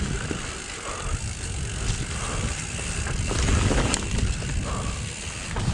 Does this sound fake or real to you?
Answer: real